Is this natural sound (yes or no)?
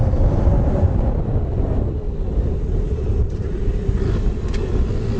yes